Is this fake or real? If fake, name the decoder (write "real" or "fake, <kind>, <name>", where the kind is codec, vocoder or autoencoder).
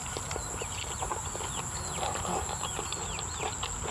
real